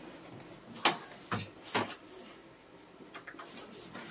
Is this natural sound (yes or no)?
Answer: yes